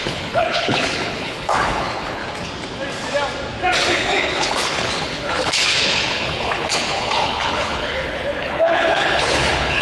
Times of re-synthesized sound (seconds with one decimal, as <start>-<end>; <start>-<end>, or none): 0.0-2.2; 3.9-9.8